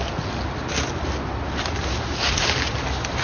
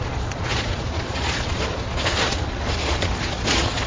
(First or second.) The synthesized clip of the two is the second